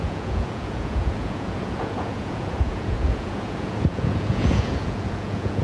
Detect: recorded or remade remade